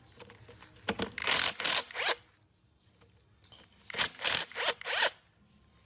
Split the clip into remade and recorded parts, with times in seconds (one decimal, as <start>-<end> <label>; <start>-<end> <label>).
0.0-5.9 recorded

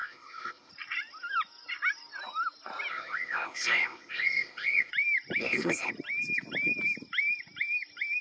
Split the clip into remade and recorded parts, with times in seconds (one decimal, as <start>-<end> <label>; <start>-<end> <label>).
0.0-0.7 remade; 0.7-2.9 recorded; 2.9-4.9 remade; 4.9-5.4 recorded; 5.4-5.9 remade; 5.9-8.2 recorded